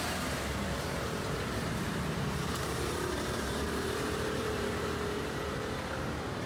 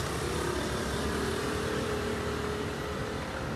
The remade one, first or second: first